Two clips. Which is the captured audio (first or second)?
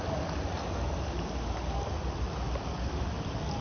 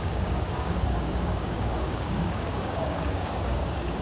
first